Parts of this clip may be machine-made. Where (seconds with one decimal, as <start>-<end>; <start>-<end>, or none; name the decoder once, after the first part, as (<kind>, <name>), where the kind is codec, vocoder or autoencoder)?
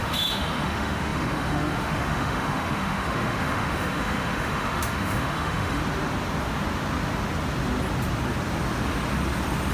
0.0-5.8 (autoencoder, DAC-VAE)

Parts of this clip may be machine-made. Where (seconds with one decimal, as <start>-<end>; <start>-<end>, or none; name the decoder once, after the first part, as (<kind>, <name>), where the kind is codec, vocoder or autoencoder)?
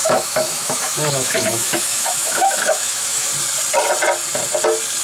0.0-3.3 (autoencoder, DAC-VAE)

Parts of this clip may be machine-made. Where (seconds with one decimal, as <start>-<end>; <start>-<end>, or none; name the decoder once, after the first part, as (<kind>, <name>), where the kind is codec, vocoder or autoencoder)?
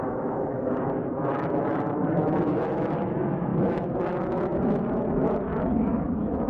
0.0-6.5 (autoencoder, DAC-VAE)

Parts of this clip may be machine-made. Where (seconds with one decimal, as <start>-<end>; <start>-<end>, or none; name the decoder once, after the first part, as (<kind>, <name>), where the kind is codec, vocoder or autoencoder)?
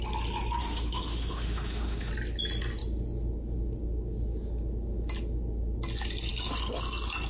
0.6-2.1 (autoencoder, DAC-VAE)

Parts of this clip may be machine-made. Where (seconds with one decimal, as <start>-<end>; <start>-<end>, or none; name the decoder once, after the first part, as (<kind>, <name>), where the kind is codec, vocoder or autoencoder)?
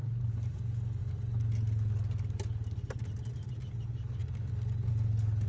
none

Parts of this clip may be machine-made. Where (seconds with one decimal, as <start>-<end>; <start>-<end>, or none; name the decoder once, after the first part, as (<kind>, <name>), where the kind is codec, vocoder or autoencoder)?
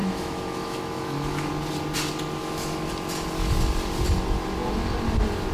0.0-1.5 (autoencoder, DAC-VAE); 2.4-2.9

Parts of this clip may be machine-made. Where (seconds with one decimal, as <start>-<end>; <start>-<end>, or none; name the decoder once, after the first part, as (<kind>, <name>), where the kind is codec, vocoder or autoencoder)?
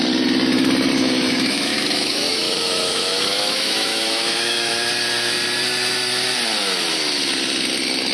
1.0-4.9 (autoencoder, DAC-VAE)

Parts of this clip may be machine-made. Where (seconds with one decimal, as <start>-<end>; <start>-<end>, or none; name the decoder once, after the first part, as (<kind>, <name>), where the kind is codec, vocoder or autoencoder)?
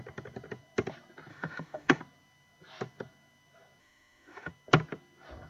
1.3-2.0 (autoencoder, DAC-VAE); 3.8-4.5